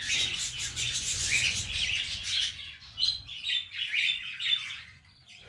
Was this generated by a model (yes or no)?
yes